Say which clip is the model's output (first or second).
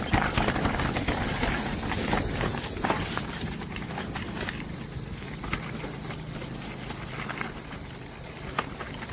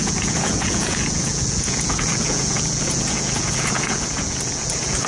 second